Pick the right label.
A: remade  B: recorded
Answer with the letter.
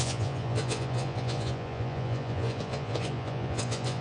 A